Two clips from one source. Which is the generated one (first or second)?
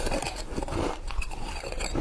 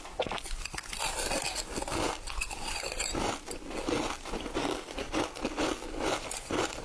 first